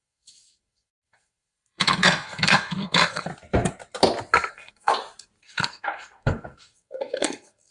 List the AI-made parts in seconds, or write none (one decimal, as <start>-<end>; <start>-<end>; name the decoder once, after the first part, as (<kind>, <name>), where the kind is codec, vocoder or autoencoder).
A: 0.0-3.3 (codec, SNAC); 4.5-4.9; 5.4-7.7